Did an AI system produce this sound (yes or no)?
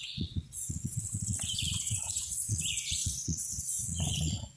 yes